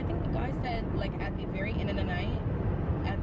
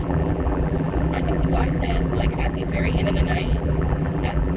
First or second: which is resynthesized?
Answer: second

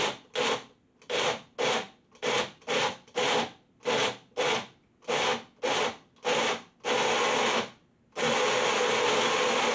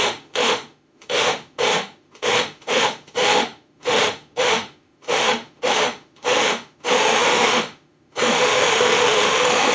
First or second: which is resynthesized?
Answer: second